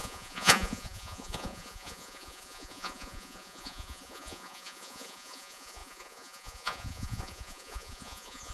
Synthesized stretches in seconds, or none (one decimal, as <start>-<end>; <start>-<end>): 0.0-8.5